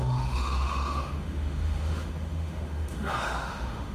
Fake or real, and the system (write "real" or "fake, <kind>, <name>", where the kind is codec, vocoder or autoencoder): fake, autoencoder, DAC-VAE